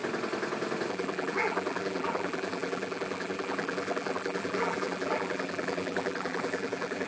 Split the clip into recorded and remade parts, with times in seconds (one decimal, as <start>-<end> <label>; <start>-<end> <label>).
0.0-0.9 recorded; 0.9-7.1 remade